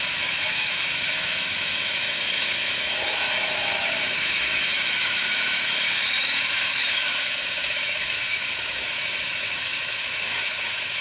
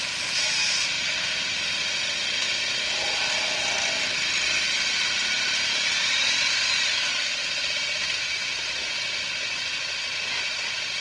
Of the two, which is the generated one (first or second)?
first